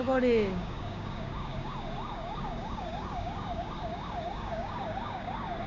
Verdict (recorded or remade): remade